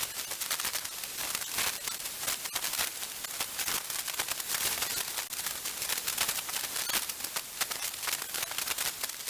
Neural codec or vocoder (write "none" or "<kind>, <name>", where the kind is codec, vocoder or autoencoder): none